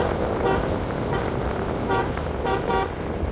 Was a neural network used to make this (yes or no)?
no